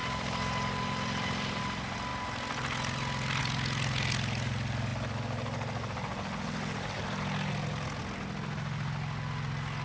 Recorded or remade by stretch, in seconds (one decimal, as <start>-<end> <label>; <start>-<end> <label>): 0.0-1.6 remade; 1.6-9.8 recorded